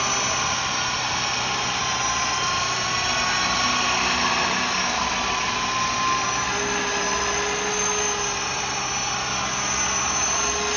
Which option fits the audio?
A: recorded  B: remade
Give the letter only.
A